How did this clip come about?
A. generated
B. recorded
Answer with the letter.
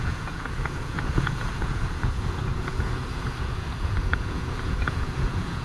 A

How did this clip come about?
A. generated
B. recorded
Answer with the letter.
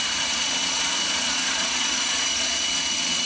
A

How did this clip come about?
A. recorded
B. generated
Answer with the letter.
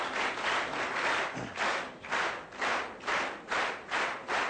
A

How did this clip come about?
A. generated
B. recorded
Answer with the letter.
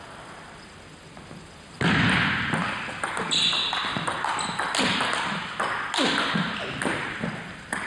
B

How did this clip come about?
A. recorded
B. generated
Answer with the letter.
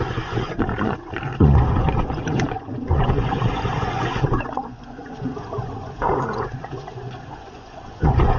B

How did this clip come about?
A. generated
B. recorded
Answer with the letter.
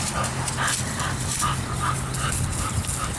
B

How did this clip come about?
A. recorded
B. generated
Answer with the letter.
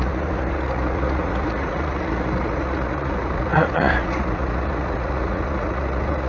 B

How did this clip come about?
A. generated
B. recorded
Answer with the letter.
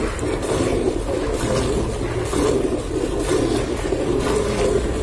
B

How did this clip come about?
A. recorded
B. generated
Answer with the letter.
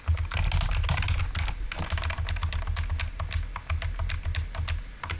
A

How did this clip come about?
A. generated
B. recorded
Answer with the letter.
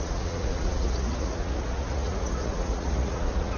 A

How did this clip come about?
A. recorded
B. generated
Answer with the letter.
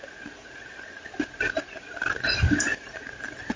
A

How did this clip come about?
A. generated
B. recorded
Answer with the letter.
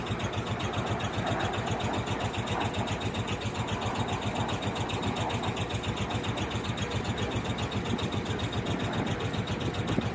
B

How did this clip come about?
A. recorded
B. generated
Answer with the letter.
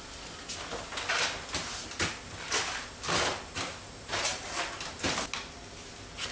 A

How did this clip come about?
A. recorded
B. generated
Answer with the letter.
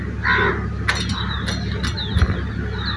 A